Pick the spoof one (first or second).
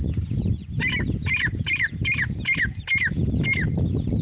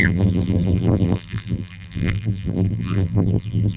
second